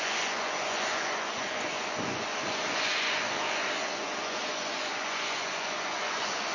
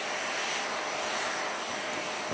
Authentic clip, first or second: second